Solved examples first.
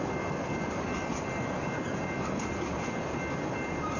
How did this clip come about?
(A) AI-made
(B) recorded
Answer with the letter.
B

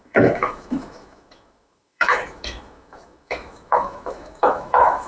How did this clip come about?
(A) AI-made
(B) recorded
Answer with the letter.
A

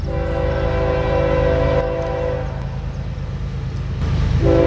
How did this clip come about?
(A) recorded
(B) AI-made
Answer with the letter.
A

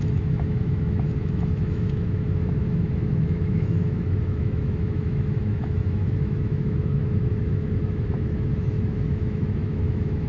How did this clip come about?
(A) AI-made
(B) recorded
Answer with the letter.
A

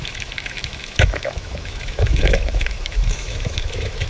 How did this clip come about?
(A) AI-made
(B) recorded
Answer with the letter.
A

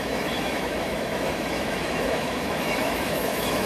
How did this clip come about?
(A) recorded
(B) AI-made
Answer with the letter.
B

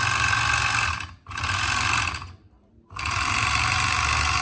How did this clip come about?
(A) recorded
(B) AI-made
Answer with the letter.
A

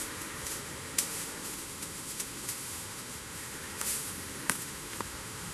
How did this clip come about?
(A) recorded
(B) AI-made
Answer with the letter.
B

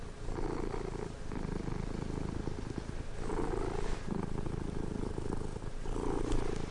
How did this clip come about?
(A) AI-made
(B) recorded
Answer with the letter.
B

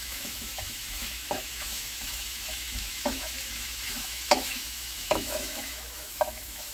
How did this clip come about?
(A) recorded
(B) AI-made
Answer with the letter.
B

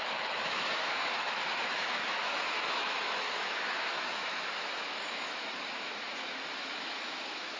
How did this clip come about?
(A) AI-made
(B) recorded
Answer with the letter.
A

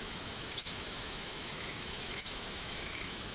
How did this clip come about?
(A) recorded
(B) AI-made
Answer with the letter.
B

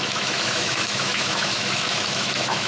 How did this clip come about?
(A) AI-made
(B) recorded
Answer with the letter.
A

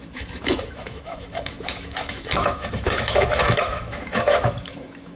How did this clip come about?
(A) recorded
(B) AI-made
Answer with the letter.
B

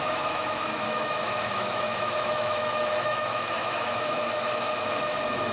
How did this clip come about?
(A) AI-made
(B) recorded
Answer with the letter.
A